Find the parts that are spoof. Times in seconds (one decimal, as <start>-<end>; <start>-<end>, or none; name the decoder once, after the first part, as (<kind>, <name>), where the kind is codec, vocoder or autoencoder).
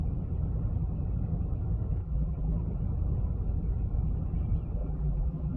2.0-2.6 (vocoder, BigVGAN v2); 4.8-5.6